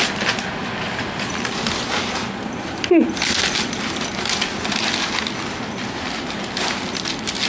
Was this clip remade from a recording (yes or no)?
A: no